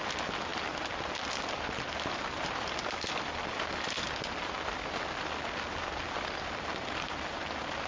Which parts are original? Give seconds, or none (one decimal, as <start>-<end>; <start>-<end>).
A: 0.0-7.9